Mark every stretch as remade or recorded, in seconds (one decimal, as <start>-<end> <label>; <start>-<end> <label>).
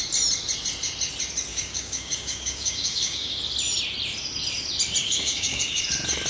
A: 0.0-1.5 recorded; 1.5-3.4 remade; 3.4-5.0 recorded; 5.0-5.8 remade; 5.8-6.3 recorded